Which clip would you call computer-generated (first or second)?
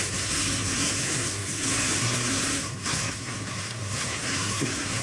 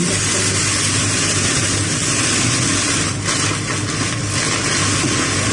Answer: first